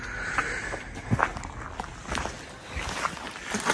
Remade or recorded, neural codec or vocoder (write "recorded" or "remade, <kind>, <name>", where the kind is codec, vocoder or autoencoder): recorded